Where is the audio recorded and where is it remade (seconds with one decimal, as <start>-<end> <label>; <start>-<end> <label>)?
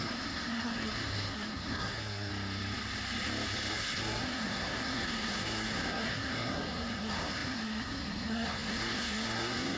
0.0-2.3 remade; 2.3-3.7 recorded; 3.7-9.8 remade